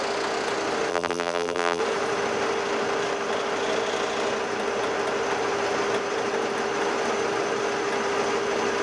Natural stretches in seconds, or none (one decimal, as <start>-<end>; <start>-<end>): 0.0-0.9; 1.8-8.8